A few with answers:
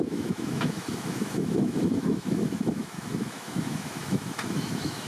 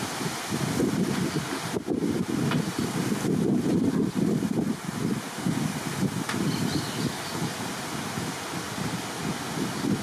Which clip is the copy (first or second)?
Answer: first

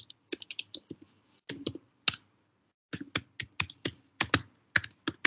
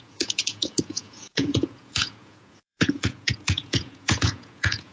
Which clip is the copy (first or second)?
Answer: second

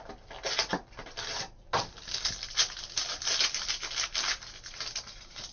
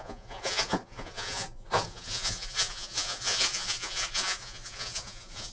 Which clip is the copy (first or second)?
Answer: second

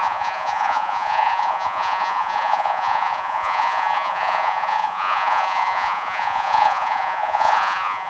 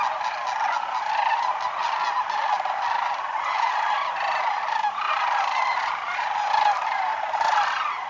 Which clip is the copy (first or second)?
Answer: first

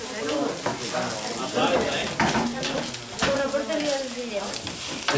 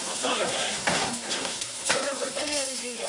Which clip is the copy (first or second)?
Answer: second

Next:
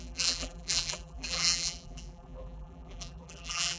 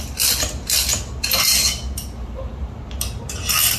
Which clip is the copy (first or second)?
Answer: first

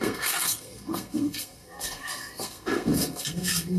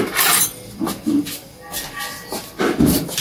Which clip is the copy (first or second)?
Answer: first